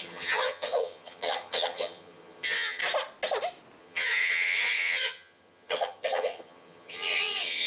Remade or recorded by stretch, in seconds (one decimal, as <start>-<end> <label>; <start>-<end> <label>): 0.0-2.8 remade; 2.8-3.8 recorded; 3.8-7.7 remade